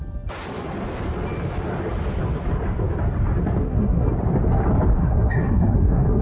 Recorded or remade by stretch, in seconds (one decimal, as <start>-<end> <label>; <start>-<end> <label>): 0.0-3.6 recorded; 3.6-4.1 remade; 4.1-5.0 recorded; 5.0-6.2 remade